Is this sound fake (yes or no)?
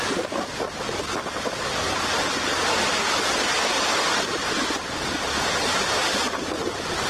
no